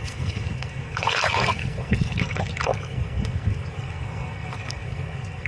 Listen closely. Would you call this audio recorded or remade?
remade